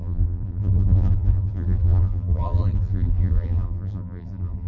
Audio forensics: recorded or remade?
remade